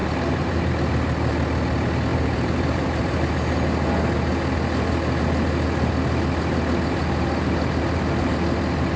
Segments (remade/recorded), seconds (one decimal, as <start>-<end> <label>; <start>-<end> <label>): 0.0-0.7 remade; 0.7-2.1 recorded; 2.1-3.3 remade; 3.3-9.0 recorded

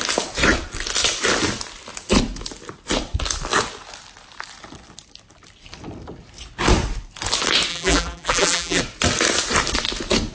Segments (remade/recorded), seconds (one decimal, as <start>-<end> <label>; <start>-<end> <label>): 0.0-7.7 recorded; 7.7-8.8 remade; 8.8-10.3 recorded

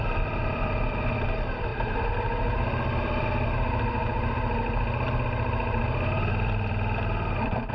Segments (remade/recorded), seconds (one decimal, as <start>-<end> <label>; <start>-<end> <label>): 0.0-1.7 remade; 1.7-6.3 recorded; 6.3-7.7 remade